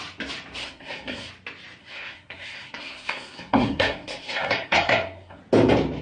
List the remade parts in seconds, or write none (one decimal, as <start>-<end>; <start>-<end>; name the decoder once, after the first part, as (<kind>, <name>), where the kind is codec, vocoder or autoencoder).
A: 0.6-1.3 (codec, SNAC); 1.8-5.4